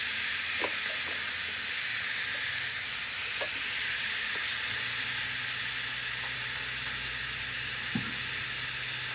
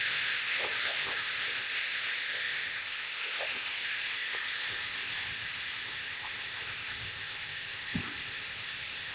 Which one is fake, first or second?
second